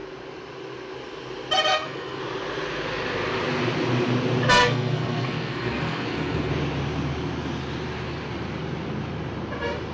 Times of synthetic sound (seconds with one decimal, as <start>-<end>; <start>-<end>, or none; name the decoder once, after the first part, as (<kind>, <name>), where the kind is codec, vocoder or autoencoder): 1.7-2.2 (codec, SNAC); 4.6-6.5